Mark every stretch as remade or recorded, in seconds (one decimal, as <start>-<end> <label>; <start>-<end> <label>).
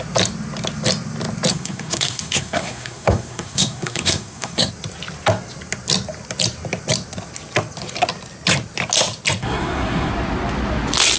0.0-1.5 recorded; 1.5-4.7 remade; 4.7-9.4 recorded; 9.4-10.1 remade; 10.1-11.2 recorded